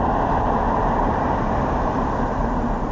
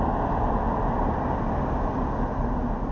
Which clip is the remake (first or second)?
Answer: first